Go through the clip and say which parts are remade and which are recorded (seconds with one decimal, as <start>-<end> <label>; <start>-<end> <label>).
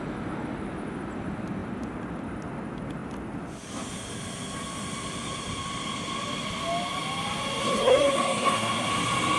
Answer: 0.0-7.6 recorded; 7.6-8.9 remade; 8.9-9.4 recorded